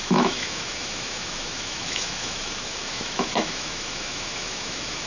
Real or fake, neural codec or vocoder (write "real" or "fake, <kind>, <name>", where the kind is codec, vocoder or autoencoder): fake, autoencoder, DAC-VAE